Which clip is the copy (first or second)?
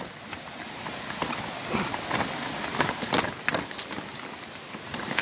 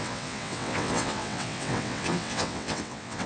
second